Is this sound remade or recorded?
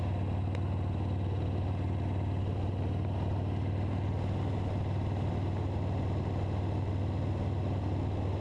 recorded